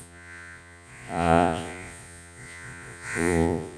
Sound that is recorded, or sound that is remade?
remade